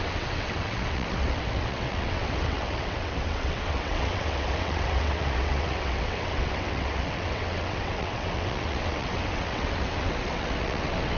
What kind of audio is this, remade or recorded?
remade